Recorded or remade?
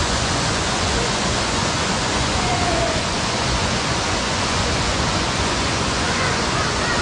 remade